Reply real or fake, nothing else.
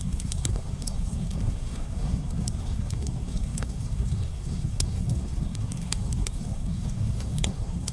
fake